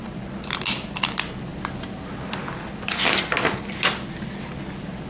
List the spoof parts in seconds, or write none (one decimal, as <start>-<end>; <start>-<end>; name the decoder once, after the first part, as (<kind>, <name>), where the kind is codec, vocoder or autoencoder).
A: none